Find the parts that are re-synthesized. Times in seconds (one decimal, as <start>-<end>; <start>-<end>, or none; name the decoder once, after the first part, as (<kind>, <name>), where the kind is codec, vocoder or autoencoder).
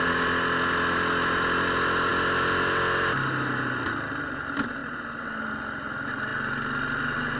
none